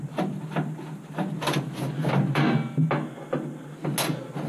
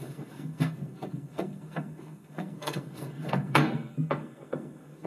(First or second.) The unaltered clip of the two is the first